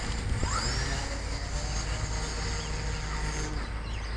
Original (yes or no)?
yes